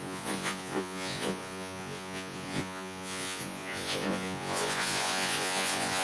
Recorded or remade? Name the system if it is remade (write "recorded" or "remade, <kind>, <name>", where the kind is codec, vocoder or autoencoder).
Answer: remade, vocoder, Vocos